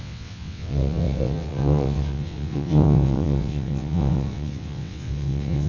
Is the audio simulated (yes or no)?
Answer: yes